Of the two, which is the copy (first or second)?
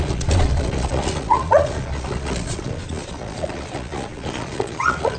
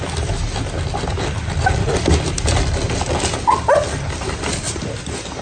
first